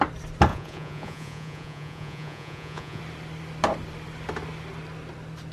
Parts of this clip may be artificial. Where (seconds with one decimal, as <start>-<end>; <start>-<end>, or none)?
0.5-3.0